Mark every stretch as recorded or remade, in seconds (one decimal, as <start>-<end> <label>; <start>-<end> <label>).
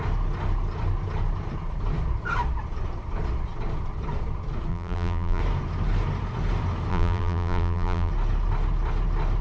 0.0-4.7 recorded; 4.7-5.4 remade; 5.4-6.9 recorded; 6.9-8.1 remade; 8.1-9.4 recorded